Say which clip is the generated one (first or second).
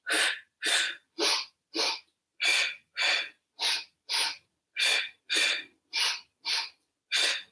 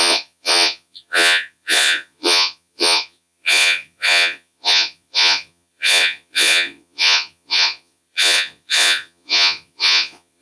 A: second